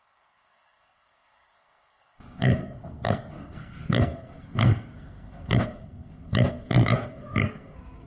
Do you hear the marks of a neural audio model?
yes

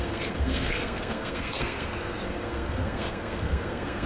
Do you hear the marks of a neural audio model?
yes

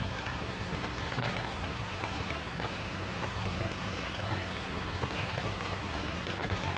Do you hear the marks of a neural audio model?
yes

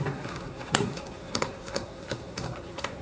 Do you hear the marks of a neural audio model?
yes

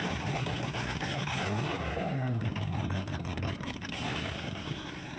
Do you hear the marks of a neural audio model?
yes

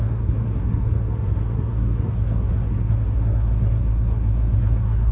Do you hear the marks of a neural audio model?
yes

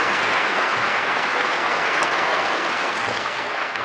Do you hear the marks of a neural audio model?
yes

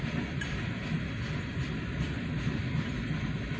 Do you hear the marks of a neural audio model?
no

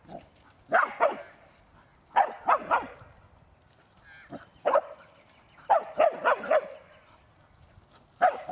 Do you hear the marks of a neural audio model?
no